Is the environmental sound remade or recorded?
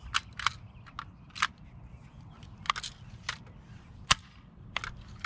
recorded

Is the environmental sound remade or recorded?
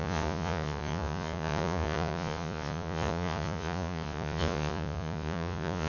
remade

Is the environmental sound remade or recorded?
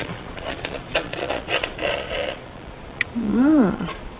remade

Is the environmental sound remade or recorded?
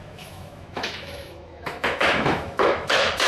remade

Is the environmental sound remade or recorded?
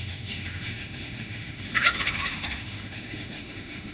remade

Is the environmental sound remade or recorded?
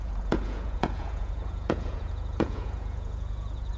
remade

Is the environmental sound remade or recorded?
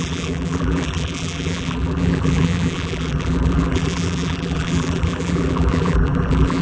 remade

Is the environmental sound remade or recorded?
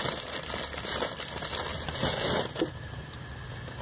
recorded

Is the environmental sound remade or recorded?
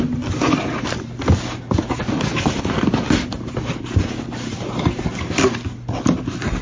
recorded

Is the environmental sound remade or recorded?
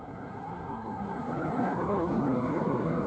remade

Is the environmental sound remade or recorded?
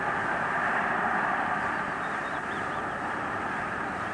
recorded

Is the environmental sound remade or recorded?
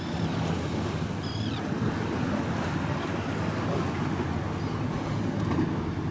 recorded